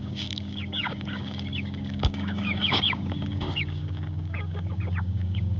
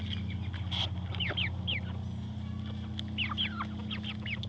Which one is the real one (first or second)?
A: second